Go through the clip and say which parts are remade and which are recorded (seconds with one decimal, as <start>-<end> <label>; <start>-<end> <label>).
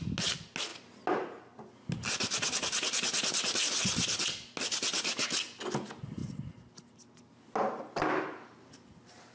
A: 0.0-9.3 recorded